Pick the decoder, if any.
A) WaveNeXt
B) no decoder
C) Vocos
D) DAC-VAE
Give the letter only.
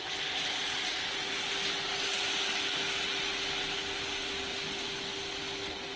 B